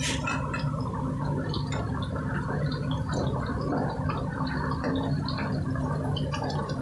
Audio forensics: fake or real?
real